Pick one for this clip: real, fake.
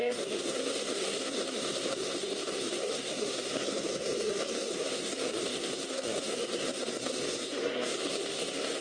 fake